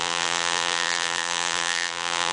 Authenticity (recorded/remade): remade